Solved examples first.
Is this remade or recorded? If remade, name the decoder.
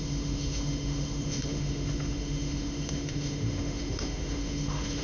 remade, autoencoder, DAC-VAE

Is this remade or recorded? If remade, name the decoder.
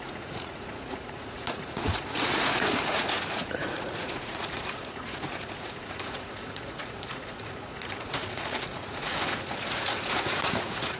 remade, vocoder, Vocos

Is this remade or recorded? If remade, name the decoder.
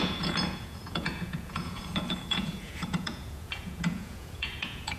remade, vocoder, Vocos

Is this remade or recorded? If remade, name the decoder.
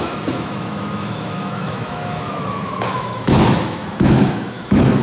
remade, autoencoder, DAC-VAE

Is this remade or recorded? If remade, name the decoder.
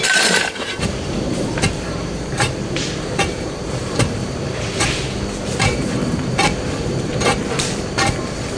remade, vocoder, BigVGAN v2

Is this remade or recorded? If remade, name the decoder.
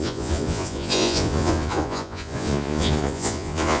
remade, vocoder, Vocos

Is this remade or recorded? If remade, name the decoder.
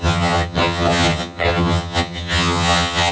remade, vocoder, HiFi-GAN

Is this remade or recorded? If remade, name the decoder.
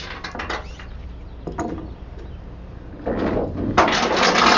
recorded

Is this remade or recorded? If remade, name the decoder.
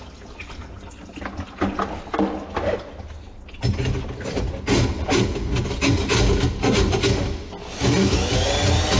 recorded